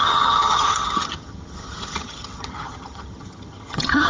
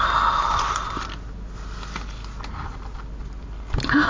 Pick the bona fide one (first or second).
second